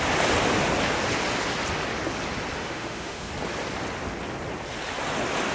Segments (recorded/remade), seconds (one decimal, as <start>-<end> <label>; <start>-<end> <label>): 0.0-2.6 recorded; 2.6-3.3 remade; 3.3-5.5 recorded